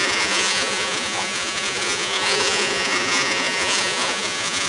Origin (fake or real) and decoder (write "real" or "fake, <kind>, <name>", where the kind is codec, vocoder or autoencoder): fake, vocoder, Vocos